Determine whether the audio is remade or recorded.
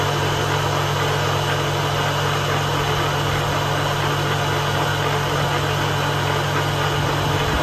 recorded